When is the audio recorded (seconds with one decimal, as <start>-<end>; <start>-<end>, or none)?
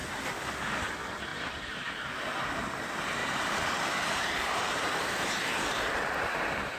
0.0-1.3; 2.1-3.2; 5.9-6.8